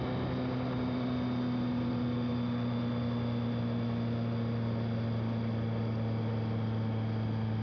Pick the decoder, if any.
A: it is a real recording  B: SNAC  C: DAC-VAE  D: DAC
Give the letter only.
A